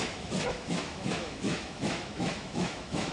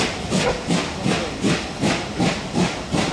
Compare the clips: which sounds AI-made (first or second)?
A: first